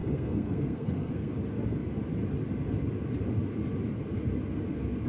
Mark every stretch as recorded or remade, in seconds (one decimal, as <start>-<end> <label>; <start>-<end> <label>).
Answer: 0.0-1.3 remade; 1.3-5.1 recorded